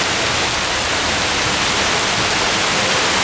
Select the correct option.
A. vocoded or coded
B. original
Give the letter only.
B